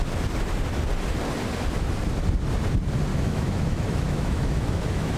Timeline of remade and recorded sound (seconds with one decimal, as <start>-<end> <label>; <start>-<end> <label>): 0.0-3.1 recorded; 3.1-5.2 remade